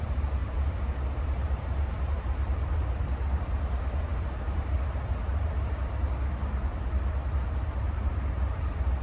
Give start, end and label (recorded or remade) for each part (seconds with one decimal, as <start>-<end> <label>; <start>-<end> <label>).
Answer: 0.0-9.0 remade